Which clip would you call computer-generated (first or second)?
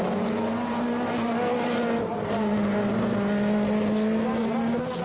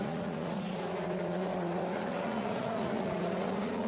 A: second